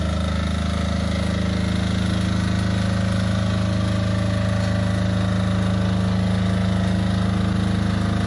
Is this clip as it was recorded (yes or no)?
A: yes